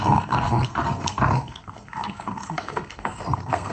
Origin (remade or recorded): remade